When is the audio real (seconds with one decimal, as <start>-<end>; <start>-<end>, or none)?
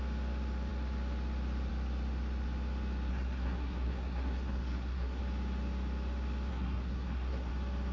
0.0-3.1; 5.2-6.5; 7.5-7.9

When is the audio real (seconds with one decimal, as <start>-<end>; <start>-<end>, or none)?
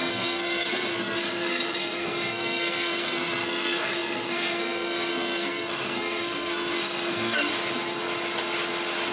7.5-9.1